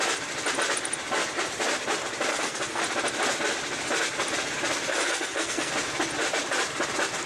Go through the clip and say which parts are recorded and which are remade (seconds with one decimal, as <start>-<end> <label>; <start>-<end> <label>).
0.0-2.3 recorded; 2.3-2.8 remade; 2.8-4.9 recorded; 4.9-5.7 remade; 5.7-7.3 recorded